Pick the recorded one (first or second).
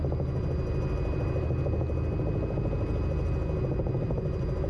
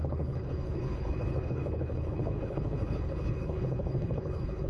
first